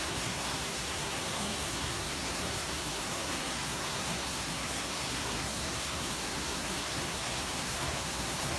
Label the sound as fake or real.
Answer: fake